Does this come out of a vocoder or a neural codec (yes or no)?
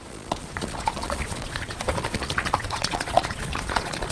yes